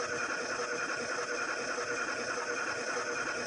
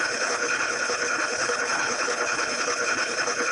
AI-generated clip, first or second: second